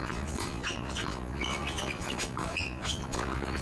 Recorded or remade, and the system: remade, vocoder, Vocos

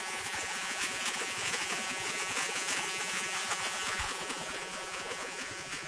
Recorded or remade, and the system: remade, vocoder, Vocos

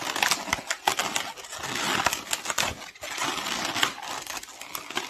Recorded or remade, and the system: recorded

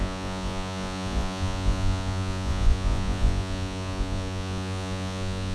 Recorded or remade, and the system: remade, vocoder, Vocos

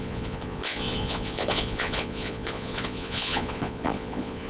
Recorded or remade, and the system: remade, vocoder, Vocos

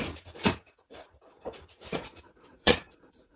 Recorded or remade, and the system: remade, vocoder, Vocos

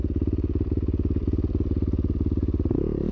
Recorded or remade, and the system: recorded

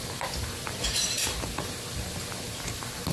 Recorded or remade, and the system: recorded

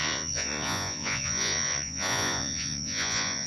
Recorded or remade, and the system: remade, vocoder, Vocos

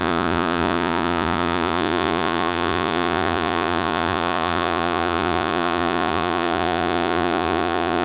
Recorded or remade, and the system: remade, vocoder, Vocos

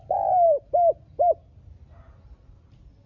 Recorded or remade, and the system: recorded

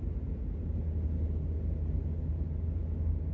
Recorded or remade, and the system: recorded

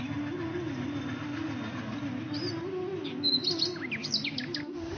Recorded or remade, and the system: recorded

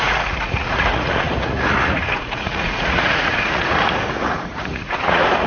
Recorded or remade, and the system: remade, vocoder, Vocos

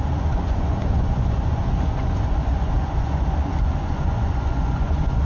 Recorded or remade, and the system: remade, vocoder, Vocos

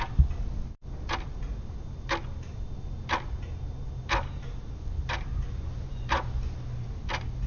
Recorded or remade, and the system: recorded